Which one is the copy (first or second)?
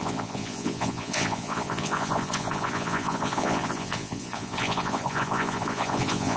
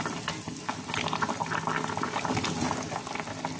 first